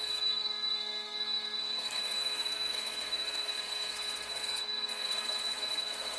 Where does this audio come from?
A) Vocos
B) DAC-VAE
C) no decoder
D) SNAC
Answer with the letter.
D